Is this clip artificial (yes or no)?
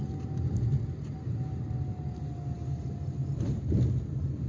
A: no